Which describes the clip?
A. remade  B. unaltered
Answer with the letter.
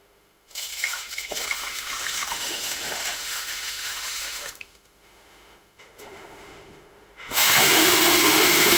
A